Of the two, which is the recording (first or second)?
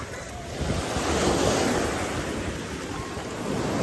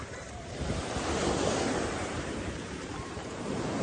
first